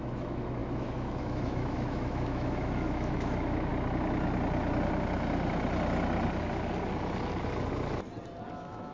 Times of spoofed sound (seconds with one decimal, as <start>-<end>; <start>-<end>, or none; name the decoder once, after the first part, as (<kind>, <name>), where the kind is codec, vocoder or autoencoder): 0.0-3.7 (autoencoder, DAC-VAE); 8.5-8.9